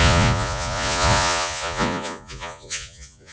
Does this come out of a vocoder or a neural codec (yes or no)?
yes